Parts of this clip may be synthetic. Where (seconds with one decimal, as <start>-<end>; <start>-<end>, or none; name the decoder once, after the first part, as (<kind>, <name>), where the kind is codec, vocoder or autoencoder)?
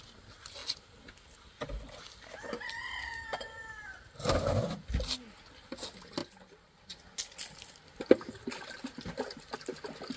none